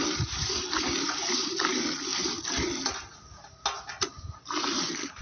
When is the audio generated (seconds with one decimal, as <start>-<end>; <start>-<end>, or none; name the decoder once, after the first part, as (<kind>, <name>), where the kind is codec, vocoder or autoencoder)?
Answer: none